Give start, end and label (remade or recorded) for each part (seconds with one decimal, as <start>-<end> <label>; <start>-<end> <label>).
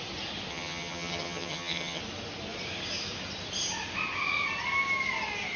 0.0-0.5 recorded; 0.5-2.0 remade; 2.0-5.6 recorded